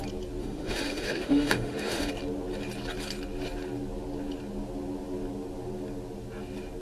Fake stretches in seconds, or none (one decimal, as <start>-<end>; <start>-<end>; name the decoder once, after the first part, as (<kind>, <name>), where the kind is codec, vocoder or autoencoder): 0.4-2.1 (autoencoder, DAC-VAE)